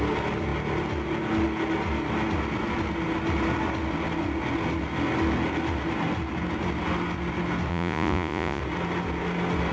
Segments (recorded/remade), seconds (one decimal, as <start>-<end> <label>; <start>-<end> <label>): 0.0-7.7 recorded; 7.7-8.6 remade; 8.6-9.7 recorded